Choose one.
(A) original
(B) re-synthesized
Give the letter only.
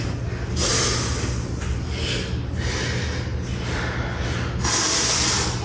A